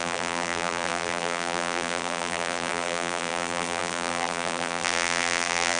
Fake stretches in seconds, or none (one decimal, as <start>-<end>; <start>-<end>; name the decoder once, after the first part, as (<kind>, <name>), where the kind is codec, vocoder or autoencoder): 0.0-5.8 (vocoder, BigVGAN v2)